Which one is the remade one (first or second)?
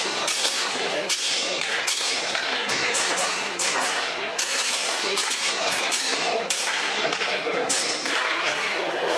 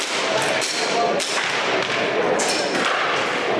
first